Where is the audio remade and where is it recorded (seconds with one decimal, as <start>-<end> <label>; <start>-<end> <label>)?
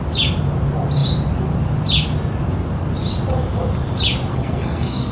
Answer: 0.0-4.3 recorded; 4.3-5.1 remade